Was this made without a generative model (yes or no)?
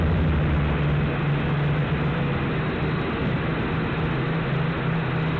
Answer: yes